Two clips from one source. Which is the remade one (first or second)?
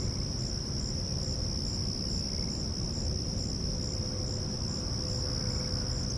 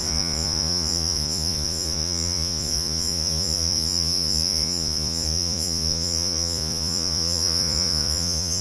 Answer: second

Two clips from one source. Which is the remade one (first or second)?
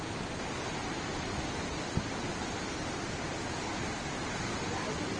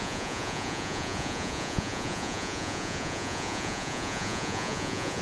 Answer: second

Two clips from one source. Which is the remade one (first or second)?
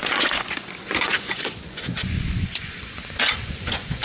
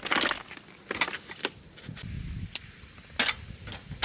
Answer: first